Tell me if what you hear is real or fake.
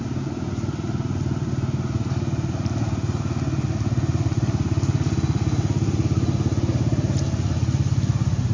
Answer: real